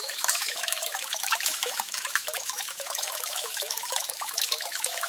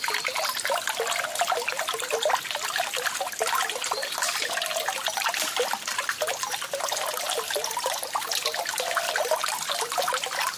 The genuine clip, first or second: second